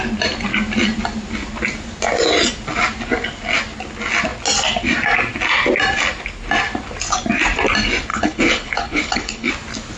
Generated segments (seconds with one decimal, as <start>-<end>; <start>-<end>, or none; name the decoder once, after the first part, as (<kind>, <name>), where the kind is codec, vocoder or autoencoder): 8.1-9.5 (codec, HILCodec)

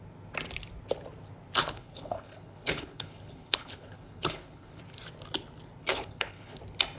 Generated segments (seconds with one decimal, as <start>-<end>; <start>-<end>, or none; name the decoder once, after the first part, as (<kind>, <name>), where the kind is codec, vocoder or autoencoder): 1.6-4.8 (codec, HILCodec); 5.8-6.6

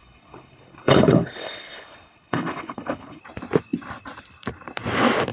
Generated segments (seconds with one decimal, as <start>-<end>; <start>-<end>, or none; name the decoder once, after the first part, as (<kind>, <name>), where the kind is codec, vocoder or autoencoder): 0.0-3.2 (codec, HILCodec)

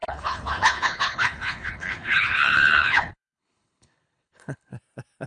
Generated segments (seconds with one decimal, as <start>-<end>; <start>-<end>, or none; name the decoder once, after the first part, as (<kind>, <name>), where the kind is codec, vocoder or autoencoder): 0.0-4.7 (codec, HILCodec)

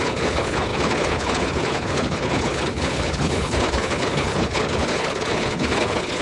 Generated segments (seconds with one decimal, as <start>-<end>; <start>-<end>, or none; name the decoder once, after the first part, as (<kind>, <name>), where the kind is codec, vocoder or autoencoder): 0.0-6.2 (codec, HILCodec)